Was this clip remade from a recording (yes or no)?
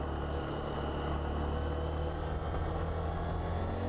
no